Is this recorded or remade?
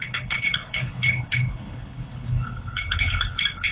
remade